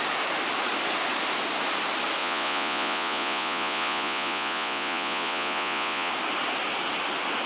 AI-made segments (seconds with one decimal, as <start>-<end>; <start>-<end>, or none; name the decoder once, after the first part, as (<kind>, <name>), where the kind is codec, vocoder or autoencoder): 2.2-6.1 (vocoder, Vocos)